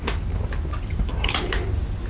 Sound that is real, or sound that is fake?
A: real